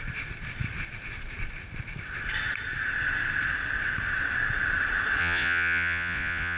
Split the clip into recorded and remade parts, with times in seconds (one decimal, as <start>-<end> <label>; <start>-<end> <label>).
0.0-5.2 recorded; 5.2-6.6 remade